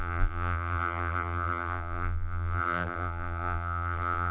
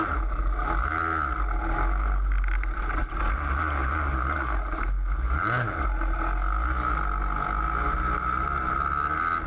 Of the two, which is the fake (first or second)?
first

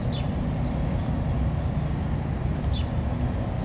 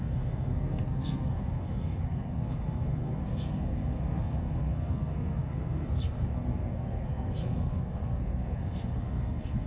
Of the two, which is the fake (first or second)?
second